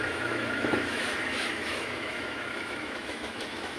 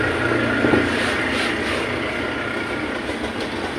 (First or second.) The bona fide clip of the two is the second